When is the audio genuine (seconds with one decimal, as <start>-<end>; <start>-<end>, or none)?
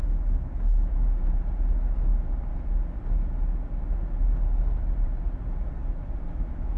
1.2-1.7; 2.1-6.2